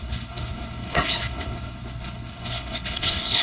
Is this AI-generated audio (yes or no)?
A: yes